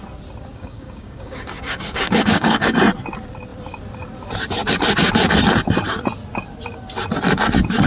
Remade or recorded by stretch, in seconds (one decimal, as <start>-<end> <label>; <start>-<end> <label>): 0.0-0.5 recorded; 0.5-2.8 remade; 2.8-7.9 recorded